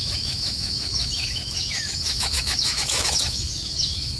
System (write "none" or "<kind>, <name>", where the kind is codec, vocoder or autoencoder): autoencoder, DAC-VAE